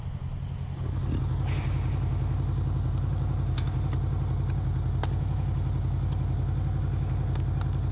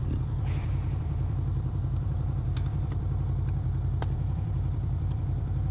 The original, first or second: first